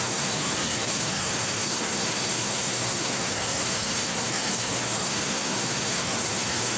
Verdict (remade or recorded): remade